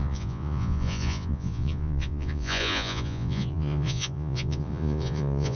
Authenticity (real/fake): fake